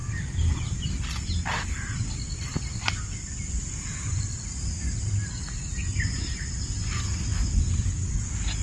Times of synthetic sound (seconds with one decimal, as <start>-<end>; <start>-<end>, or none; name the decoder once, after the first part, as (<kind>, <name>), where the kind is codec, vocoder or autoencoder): 1.3-7.3 (vocoder, BigVGAN v2)